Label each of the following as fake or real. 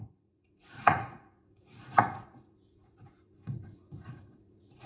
fake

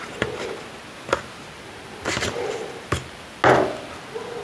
real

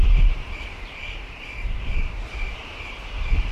fake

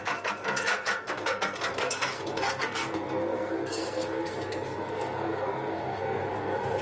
fake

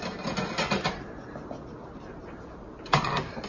real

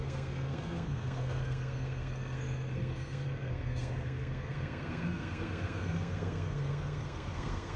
fake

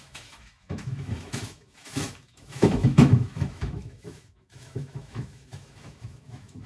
fake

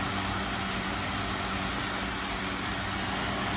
real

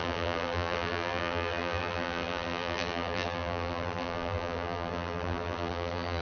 fake